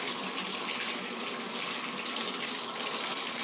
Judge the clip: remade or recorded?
recorded